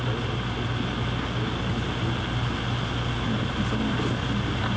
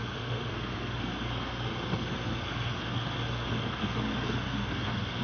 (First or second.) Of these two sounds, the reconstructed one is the second